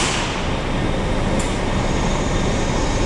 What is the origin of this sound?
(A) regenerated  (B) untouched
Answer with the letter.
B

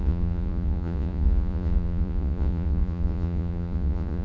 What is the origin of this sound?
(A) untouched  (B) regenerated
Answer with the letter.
B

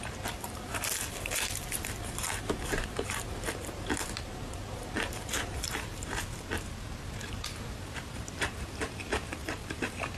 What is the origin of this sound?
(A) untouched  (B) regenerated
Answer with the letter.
B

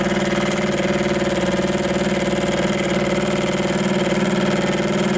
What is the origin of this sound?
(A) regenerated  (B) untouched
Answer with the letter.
B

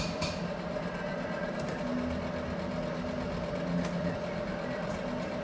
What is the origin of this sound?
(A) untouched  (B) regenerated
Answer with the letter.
A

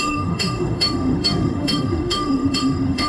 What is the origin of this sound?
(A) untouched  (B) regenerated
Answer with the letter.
B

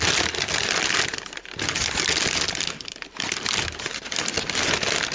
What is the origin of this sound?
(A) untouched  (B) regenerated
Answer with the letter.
A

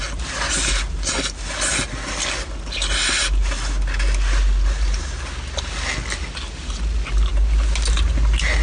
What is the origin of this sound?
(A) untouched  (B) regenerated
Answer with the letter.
A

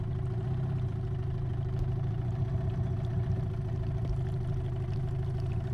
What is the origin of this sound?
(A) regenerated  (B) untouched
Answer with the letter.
B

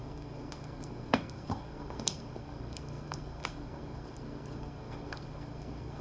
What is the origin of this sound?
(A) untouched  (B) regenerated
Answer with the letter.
B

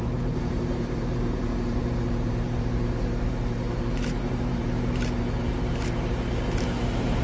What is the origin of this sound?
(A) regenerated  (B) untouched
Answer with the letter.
A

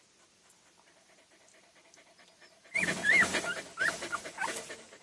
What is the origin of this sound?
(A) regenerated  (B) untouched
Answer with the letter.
B